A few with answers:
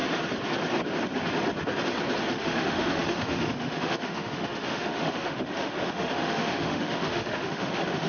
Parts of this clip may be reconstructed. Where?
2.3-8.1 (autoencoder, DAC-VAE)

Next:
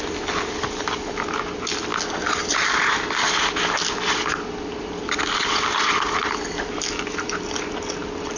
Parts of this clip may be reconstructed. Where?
none